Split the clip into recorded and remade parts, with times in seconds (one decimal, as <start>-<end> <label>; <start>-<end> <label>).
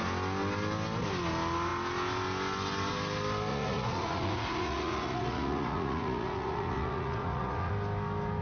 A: 0.0-3.5 recorded; 3.5-7.7 remade; 7.7-8.4 recorded